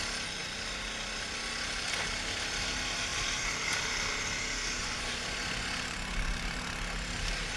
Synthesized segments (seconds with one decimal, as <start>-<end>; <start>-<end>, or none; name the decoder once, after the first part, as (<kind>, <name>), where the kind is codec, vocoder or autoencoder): 4.8-6.6 (vocoder, Vocos)